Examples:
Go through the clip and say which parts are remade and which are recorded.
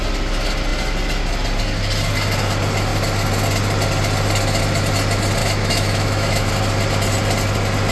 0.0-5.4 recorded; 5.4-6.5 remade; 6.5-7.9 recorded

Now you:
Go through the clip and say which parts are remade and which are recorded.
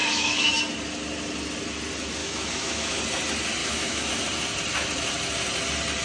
0.0-0.6 remade; 0.6-2.2 recorded; 2.2-3.0 remade; 3.0-3.6 recorded; 3.6-4.1 remade; 4.1-6.0 recorded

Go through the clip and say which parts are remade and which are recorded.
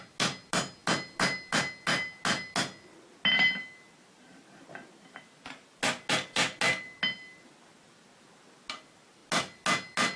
0.0-10.2 recorded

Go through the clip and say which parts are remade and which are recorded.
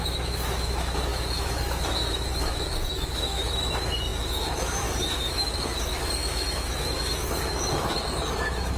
0.0-8.8 remade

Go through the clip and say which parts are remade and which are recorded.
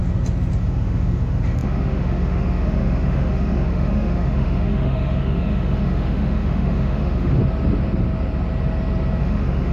0.0-0.6 recorded; 0.6-7.4 remade; 7.4-9.2 recorded; 9.2-9.7 remade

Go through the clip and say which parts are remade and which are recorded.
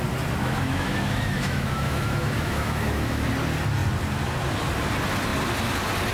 0.0-0.4 recorded; 0.4-3.3 remade; 3.3-6.1 recorded